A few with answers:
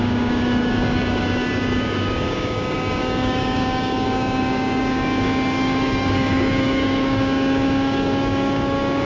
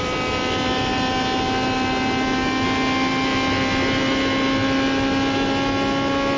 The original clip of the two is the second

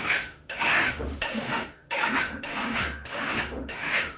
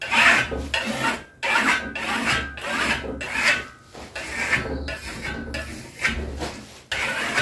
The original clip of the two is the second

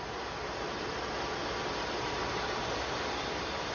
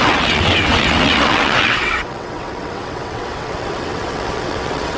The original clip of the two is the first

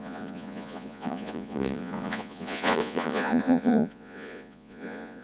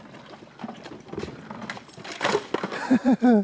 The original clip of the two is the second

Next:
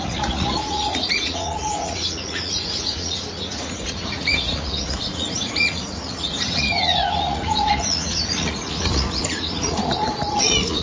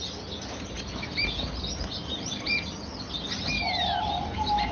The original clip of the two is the second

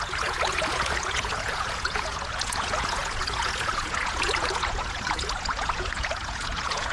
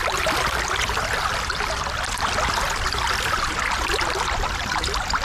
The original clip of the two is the second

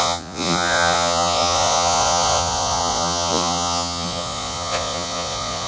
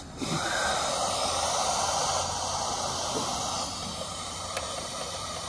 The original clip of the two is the second